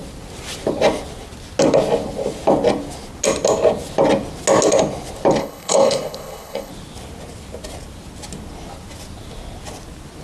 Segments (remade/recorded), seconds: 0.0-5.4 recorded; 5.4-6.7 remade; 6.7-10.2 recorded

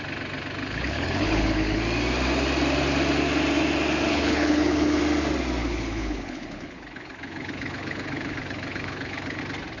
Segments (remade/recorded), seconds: 0.0-0.6 recorded; 0.6-1.8 remade; 1.8-4.1 recorded; 4.1-5.0 remade; 5.0-5.6 recorded; 5.6-9.4 remade; 9.4-9.8 recorded

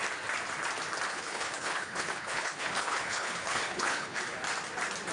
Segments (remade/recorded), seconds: 0.0-1.1 recorded; 1.1-4.2 remade; 4.2-5.1 recorded